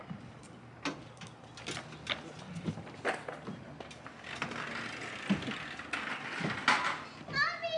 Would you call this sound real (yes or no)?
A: yes